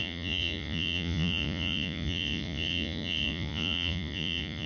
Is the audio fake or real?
fake